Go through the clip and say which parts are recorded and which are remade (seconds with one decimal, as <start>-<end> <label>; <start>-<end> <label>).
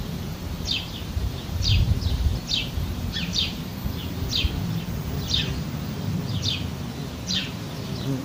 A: 0.0-3.7 remade; 3.7-7.0 recorded; 7.0-8.2 remade